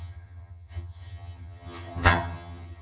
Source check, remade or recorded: remade